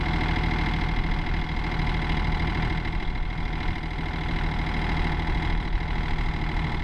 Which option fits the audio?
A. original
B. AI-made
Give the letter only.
A